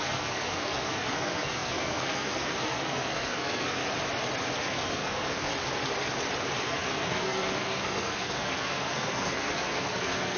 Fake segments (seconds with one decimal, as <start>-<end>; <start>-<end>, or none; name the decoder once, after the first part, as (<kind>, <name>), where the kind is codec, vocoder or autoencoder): 0.0-3.8 (codec, SNAC); 4.6-5.5; 6.6-10.4